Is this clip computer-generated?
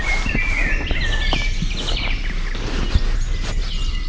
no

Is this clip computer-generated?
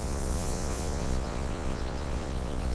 yes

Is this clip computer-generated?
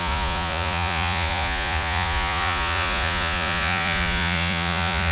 yes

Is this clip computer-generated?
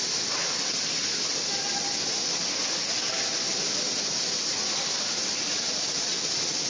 no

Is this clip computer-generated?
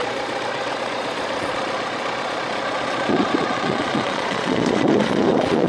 yes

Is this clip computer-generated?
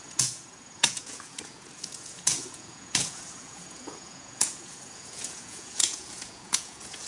yes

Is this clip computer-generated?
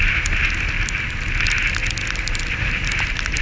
no